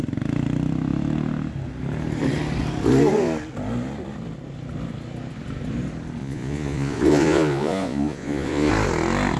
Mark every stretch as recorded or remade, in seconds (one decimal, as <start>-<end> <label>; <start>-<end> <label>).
0.0-6.2 recorded; 6.2-8.7 remade; 8.7-9.4 recorded